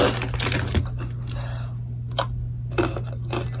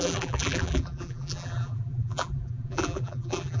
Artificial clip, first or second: second